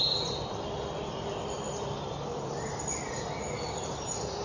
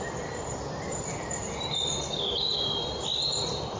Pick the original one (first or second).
first